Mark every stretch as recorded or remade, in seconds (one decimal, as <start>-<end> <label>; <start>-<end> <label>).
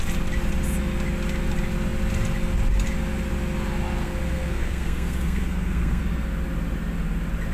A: 0.0-4.0 recorded; 4.0-6.0 remade; 6.0-7.5 recorded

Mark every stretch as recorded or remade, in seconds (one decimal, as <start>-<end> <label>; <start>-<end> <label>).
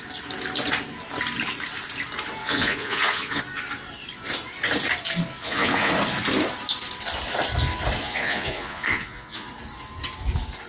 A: 0.0-2.4 recorded; 2.4-3.4 remade; 3.4-5.4 recorded; 5.4-5.9 remade; 5.9-8.0 recorded; 8.0-9.5 remade; 9.5-10.7 recorded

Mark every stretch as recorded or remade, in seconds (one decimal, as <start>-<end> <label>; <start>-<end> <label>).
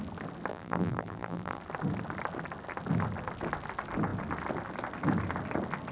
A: 0.0-0.5 recorded; 0.5-1.6 remade; 1.6-5.9 recorded